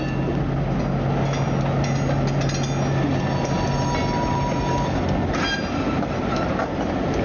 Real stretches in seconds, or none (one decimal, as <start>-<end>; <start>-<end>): 0.0-7.2